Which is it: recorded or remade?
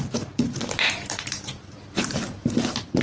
recorded